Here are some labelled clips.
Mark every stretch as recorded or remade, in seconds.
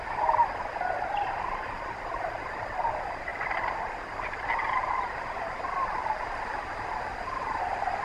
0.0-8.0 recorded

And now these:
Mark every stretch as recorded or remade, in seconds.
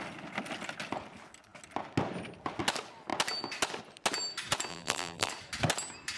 0.0-4.7 recorded; 4.7-5.3 remade; 5.3-6.2 recorded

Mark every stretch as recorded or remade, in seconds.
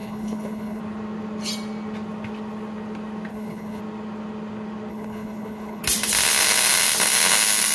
0.0-0.8 remade; 0.8-3.3 recorded; 3.3-3.8 remade; 3.8-4.9 recorded; 4.9-5.8 remade; 5.8-7.7 recorded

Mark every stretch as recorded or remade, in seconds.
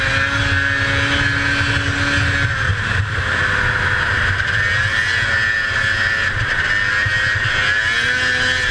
0.0-8.7 recorded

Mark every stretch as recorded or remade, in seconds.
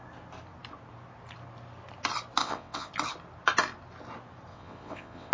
0.0-2.4 recorded; 2.4-2.9 remade; 2.9-4.5 recorded; 4.5-5.3 remade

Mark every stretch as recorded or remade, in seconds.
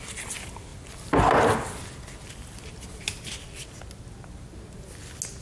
0.0-5.4 recorded